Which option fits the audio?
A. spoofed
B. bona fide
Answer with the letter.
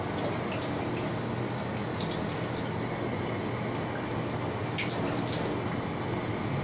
B